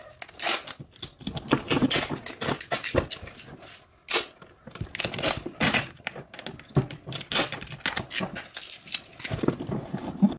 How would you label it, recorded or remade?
recorded